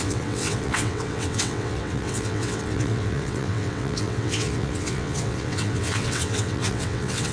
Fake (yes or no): yes